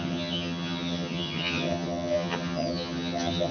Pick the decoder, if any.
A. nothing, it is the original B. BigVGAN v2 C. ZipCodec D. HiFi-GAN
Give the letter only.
D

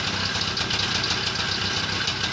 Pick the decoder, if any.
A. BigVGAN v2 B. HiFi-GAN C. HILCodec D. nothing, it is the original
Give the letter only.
D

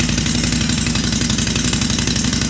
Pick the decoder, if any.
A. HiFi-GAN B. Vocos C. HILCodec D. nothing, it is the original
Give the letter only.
D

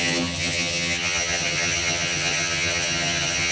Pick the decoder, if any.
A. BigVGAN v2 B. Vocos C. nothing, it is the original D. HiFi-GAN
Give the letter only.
D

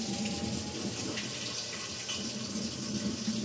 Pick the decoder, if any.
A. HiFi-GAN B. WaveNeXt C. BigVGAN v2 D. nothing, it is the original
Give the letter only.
D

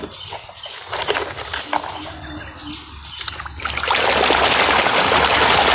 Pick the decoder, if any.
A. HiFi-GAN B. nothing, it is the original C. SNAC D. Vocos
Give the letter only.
B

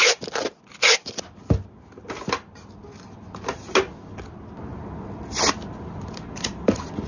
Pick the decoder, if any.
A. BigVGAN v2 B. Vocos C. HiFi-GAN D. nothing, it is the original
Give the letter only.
D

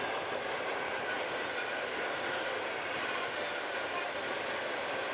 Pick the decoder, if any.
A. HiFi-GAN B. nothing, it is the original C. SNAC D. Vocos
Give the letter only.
B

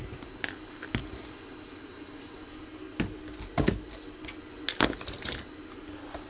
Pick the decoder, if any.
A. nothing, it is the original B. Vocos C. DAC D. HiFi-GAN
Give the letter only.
A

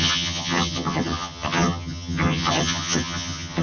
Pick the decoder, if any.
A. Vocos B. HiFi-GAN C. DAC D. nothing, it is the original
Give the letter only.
B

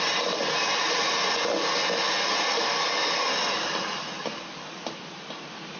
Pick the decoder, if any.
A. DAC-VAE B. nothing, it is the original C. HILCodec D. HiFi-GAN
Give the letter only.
B